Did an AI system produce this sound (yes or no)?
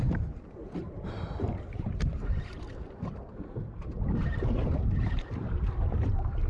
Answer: yes